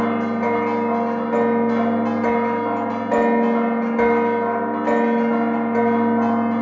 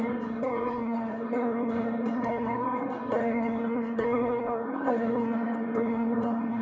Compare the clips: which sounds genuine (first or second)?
first